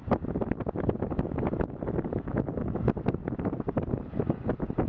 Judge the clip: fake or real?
real